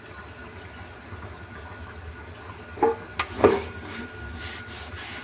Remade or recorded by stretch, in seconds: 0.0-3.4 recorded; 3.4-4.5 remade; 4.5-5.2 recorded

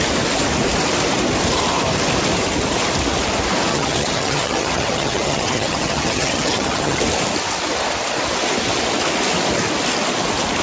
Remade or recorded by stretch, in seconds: 0.0-3.7 recorded; 3.7-7.0 remade; 7.0-10.6 recorded

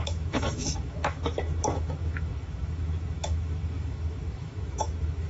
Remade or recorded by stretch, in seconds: 0.0-5.3 remade

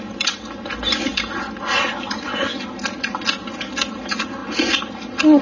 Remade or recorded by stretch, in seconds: 0.0-5.4 recorded

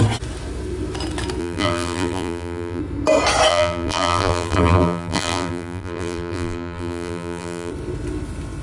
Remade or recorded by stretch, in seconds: 0.0-1.4 recorded; 1.4-2.8 remade; 2.8-3.5 recorded; 3.5-7.7 remade; 7.7-8.6 recorded